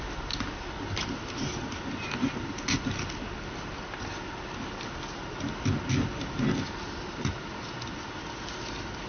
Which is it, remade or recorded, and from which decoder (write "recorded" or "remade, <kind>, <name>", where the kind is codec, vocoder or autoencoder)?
recorded